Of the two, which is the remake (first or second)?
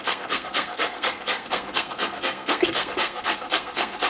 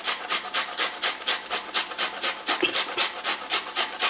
first